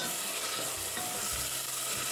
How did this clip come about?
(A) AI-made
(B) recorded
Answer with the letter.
B